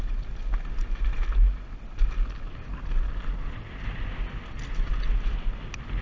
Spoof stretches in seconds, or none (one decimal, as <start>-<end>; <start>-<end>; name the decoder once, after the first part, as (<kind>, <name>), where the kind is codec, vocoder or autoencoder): none